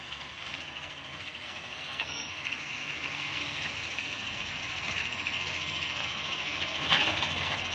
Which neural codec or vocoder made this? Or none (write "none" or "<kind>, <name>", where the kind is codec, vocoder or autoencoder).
codec, SNAC